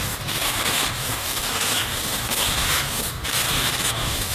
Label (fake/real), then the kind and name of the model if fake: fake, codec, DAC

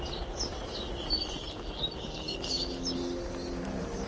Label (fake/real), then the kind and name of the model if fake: real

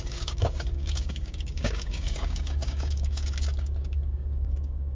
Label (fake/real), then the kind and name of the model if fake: fake, codec, DAC